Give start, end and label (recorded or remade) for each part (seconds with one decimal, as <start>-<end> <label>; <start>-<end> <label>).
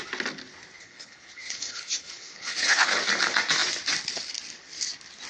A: 0.0-0.8 recorded; 0.8-3.0 remade; 3.0-5.3 recorded